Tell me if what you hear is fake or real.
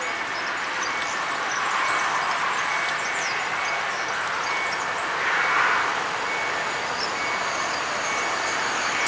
real